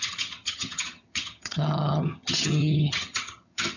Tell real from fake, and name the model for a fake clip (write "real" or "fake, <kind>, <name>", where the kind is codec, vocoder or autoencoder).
fake, vocoder, HiFi-GAN